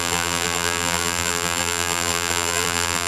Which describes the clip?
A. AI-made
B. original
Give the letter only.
A